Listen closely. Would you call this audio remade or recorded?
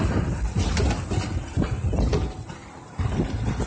recorded